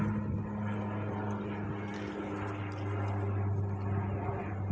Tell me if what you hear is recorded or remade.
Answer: recorded